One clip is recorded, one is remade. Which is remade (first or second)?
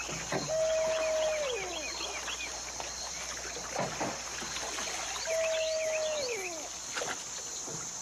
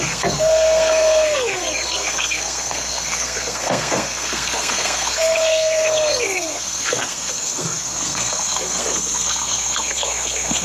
second